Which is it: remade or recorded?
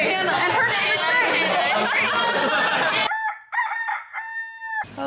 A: recorded